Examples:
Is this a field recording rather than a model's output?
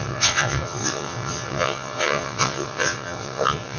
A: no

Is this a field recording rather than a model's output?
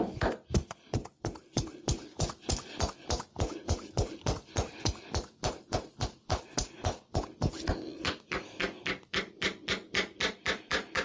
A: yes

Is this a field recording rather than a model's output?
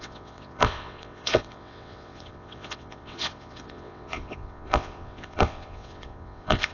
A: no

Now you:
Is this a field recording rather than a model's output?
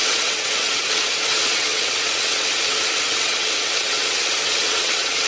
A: no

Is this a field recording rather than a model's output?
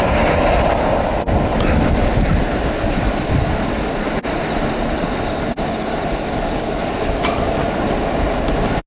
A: yes